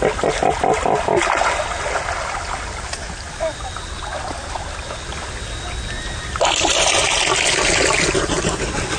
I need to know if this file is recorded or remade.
recorded